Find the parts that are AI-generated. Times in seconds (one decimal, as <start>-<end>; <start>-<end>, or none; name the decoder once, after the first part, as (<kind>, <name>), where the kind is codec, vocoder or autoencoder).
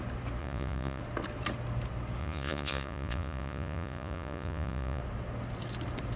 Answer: 0.4-1.0 (vocoder, Vocos); 2.2-5.0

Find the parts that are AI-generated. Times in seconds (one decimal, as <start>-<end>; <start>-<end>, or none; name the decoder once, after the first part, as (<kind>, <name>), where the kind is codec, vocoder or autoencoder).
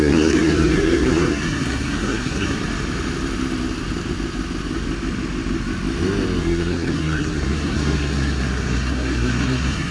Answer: 0.0-2.6 (codec, SNAC); 6.4-9.9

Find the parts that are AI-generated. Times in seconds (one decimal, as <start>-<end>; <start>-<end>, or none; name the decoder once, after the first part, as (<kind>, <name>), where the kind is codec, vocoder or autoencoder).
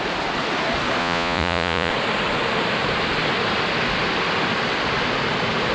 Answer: 1.0-1.9 (vocoder, Vocos)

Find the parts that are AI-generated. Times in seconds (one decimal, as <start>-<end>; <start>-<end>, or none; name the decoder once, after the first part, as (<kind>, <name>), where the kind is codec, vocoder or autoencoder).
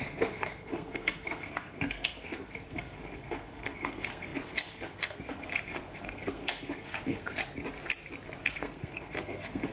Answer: 0.0-7.4 (codec, SNAC); 8.4-9.7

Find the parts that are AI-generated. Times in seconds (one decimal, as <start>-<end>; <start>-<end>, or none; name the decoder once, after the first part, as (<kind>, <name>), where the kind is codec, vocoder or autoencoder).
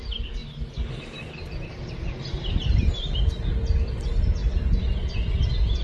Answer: none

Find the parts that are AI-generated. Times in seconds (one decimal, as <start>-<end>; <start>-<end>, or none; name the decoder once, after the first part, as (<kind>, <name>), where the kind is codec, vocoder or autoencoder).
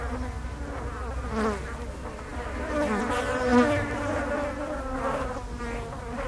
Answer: none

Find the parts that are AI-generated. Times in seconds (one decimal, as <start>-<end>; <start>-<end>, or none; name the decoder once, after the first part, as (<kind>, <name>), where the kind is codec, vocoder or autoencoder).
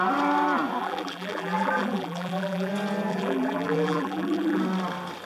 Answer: 0.8-2.7 (vocoder, BigVGAN v2); 3.1-4.6